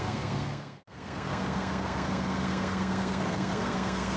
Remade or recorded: remade